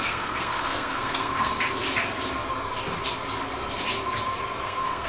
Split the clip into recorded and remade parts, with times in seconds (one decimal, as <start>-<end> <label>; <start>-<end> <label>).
0.0-1.5 remade; 1.5-4.6 recorded; 4.6-5.1 remade

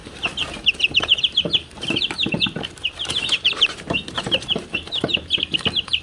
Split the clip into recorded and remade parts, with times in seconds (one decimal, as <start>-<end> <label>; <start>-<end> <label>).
0.0-6.0 remade

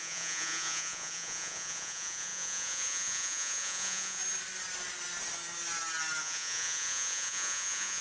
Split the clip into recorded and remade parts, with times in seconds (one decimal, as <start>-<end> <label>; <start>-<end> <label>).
0.0-4.2 remade; 4.2-6.2 recorded; 6.2-8.0 remade

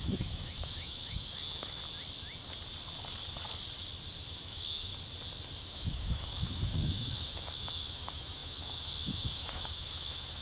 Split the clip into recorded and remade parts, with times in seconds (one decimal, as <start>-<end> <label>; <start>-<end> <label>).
0.0-1.8 remade; 1.8-4.3 recorded; 4.3-4.9 remade; 4.9-5.6 recorded; 5.6-10.4 remade

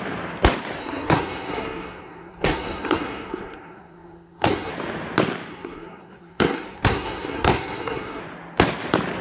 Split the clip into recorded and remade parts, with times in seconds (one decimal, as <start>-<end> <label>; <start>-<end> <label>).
0.0-0.8 recorded; 0.8-4.7 remade; 4.7-5.5 recorded; 5.5-8.2 remade; 8.2-9.2 recorded

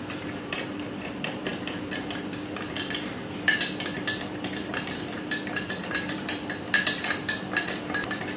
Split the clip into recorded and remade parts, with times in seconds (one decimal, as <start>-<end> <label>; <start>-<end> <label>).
0.0-8.4 remade

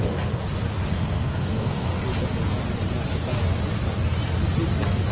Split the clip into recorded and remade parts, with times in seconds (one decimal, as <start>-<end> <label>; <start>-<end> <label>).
0.0-0.4 remade; 0.4-0.9 recorded; 0.9-2.0 remade; 2.0-5.1 recorded